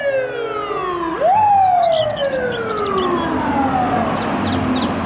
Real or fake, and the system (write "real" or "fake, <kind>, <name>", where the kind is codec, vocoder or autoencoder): real